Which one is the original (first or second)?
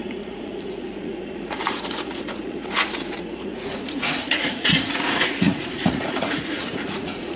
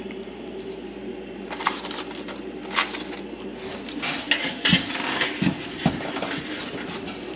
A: second